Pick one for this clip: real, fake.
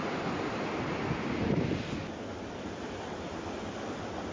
real